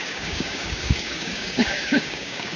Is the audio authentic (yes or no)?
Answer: no